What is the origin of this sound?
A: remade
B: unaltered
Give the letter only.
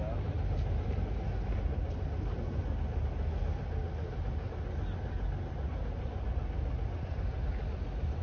B